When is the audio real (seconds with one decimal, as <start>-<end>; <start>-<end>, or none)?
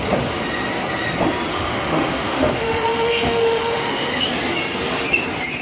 0.0-1.5; 4.2-5.6